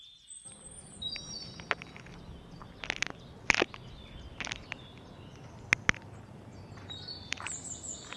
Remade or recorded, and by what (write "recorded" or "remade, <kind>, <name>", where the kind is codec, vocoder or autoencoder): recorded